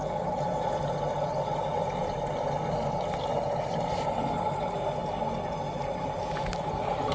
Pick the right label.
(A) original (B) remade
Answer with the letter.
A